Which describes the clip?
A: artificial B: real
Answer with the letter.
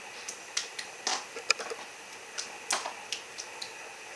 B